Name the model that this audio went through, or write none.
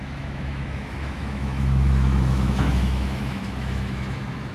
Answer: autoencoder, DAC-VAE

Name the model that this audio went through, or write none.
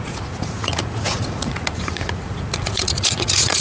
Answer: vocoder, Vocos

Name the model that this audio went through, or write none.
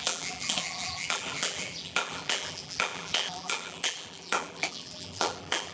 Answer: vocoder, BigVGAN v2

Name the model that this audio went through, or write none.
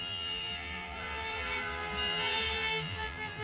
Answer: vocoder, BigVGAN v2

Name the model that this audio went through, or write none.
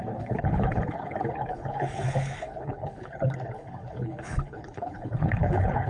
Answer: codec, HILCodec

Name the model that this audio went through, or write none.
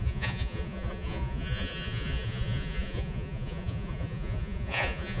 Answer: vocoder, Vocos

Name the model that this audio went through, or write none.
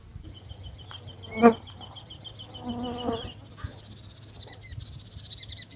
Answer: none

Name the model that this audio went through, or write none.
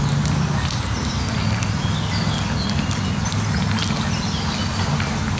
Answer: none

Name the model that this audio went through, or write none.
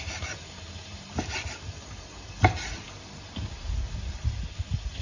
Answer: none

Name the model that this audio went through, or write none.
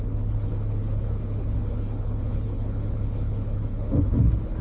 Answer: codec, HILCodec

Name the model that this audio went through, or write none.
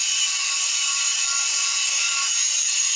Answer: vocoder, BigVGAN v2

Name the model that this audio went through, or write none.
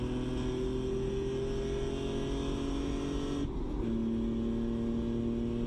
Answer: none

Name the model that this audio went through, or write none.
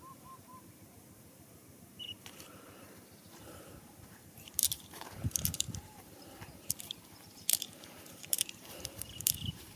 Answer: vocoder, BigVGAN v2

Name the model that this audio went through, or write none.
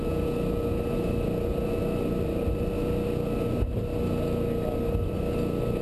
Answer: none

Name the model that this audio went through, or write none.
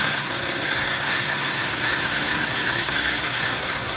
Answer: codec, SNAC